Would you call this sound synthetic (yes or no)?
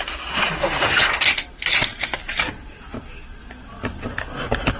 no